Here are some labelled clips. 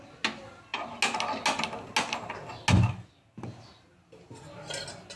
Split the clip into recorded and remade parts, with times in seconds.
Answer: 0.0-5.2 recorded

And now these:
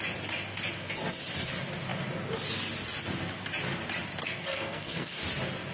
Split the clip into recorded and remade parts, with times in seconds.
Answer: 0.0-4.2 recorded; 4.2-5.2 remade; 5.2-5.7 recorded

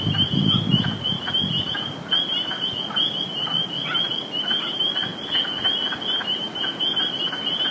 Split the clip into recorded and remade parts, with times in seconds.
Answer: 0.0-7.7 recorded